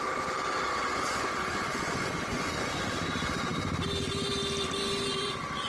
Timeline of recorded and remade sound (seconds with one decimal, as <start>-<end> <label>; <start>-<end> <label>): 0.0-0.9 recorded; 0.9-2.8 remade; 2.8-5.1 recorded; 5.1-5.7 remade